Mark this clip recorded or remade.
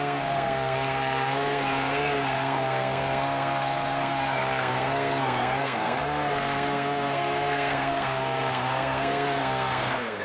remade